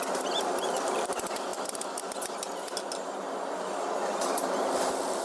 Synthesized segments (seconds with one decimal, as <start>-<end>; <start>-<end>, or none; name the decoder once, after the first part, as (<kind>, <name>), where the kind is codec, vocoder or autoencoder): 0.0-1.5 (vocoder, BigVGAN v2); 4.6-5.2